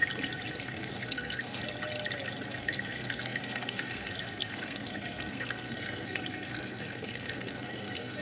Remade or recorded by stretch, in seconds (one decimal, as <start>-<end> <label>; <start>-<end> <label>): 0.0-0.6 recorded; 0.6-1.6 remade; 1.6-2.5 recorded; 2.5-8.2 remade